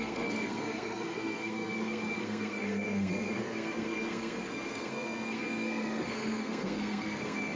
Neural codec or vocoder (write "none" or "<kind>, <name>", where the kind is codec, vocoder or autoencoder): codec, SNAC